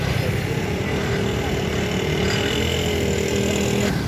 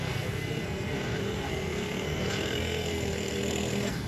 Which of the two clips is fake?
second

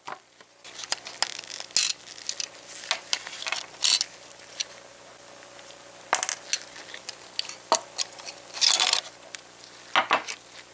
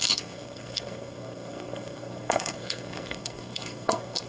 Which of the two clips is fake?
second